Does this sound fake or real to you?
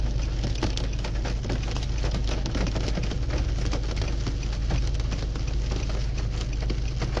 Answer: real